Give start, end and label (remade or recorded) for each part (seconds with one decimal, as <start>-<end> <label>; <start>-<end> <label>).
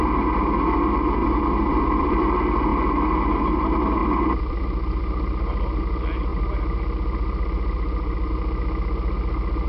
0.0-1.2 recorded; 1.2-2.2 remade; 2.2-4.0 recorded; 4.0-5.8 remade; 5.8-6.3 recorded; 6.3-8.3 remade; 8.3-9.7 recorded